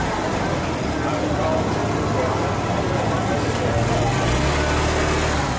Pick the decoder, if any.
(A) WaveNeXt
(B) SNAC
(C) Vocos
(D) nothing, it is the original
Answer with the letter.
D